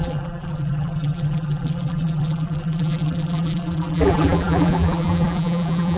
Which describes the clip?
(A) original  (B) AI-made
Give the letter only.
B